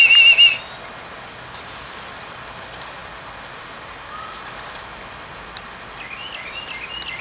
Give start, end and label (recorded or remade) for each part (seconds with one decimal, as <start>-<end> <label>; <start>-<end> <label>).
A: 0.0-7.2 recorded